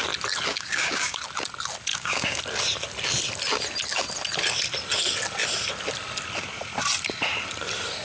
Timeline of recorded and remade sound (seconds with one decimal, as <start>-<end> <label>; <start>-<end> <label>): 0.0-0.5 recorded; 0.5-1.2 remade; 1.2-1.9 recorded; 1.9-2.4 remade; 2.4-8.0 recorded